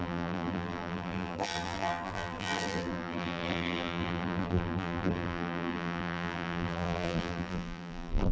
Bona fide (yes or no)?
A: no